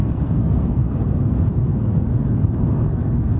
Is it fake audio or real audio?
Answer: fake